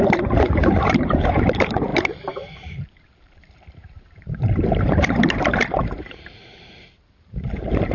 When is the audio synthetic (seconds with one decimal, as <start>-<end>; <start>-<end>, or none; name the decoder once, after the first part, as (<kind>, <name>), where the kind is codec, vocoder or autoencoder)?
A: 0.0-7.9 (vocoder, BigVGAN v2)